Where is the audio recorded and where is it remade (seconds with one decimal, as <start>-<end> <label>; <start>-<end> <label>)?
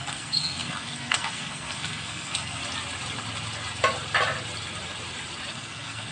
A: 0.0-2.6 remade; 2.6-5.5 recorded; 5.5-6.1 remade